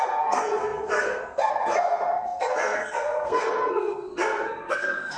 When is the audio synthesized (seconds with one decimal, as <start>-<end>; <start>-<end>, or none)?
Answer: 0.0-5.2